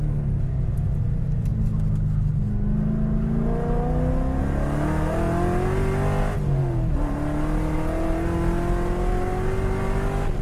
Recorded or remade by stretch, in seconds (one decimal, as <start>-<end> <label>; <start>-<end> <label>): 0.0-10.4 recorded